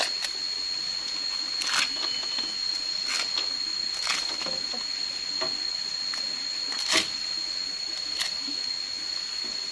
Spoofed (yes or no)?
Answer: no